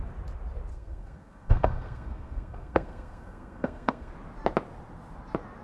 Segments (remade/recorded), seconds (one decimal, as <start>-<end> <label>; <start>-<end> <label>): 0.0-0.7 recorded; 0.7-4.1 remade; 4.1-5.6 recorded